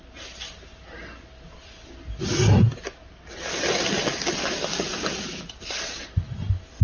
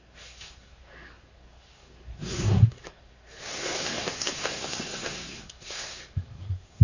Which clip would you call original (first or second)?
first